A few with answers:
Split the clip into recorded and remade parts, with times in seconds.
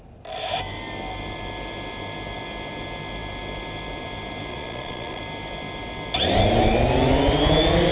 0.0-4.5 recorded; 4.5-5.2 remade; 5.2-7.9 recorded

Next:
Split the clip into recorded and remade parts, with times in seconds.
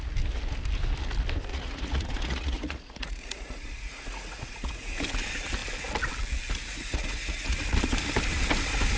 0.0-1.5 recorded; 1.5-5.0 remade; 5.0-6.6 recorded; 6.6-7.6 remade; 7.6-9.0 recorded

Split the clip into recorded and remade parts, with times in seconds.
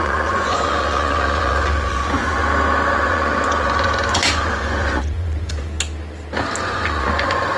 0.0-2.4 remade; 2.4-2.9 recorded; 2.9-5.7 remade; 5.7-6.6 recorded; 6.6-7.6 remade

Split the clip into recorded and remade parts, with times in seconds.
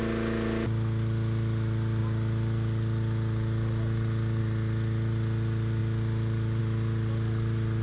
0.0-7.8 recorded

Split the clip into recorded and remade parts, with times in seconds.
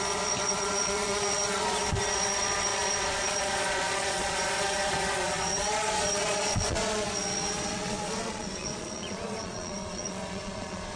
0.0-11.0 remade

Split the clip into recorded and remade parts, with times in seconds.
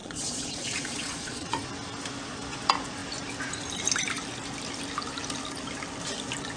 0.0-1.6 remade; 1.6-6.6 recorded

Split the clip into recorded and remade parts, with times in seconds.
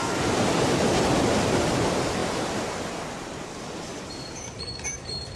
0.0-5.4 recorded